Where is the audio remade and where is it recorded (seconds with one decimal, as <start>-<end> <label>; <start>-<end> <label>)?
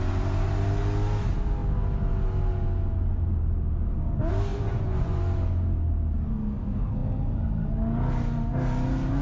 0.0-4.5 recorded; 4.5-5.2 remade; 5.2-9.2 recorded